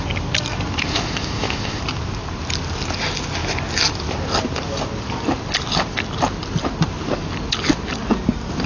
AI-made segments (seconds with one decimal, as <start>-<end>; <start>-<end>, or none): 0.8-1.8